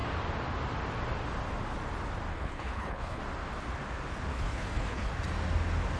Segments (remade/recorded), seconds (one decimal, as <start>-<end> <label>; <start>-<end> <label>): 0.0-2.3 recorded; 2.3-3.2 remade; 3.2-4.3 recorded; 4.3-5.1 remade; 5.1-6.0 recorded